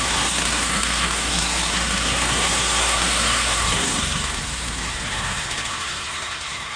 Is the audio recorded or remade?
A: remade